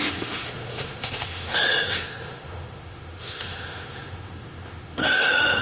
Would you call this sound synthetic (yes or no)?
yes